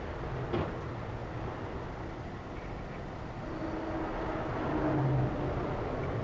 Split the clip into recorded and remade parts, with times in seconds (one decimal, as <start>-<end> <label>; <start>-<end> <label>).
0.0-6.2 recorded